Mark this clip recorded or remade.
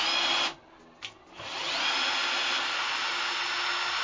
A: recorded